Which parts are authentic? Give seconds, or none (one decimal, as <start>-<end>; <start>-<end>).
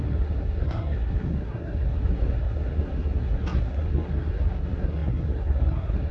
none